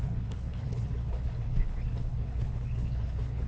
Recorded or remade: remade